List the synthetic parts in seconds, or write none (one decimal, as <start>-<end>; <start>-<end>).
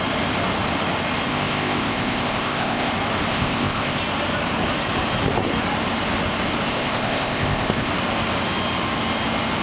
1.3-2.9; 3.3-4.0; 6.7-7.9